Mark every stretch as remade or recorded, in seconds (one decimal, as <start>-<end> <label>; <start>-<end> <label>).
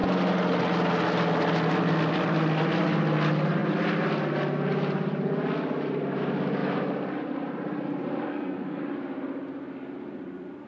0.0-8.3 recorded; 8.3-8.8 remade; 8.8-10.7 recorded